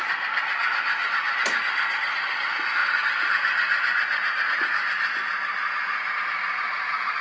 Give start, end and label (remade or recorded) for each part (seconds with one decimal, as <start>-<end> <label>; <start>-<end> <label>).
0.0-7.2 recorded